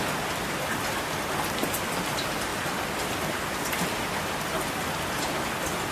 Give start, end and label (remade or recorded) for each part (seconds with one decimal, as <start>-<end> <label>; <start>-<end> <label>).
0.0-2.5 recorded; 2.5-3.6 remade; 3.6-5.9 recorded